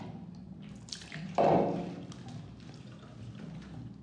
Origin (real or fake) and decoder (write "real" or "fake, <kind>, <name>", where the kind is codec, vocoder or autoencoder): real